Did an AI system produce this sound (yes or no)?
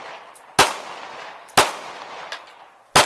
no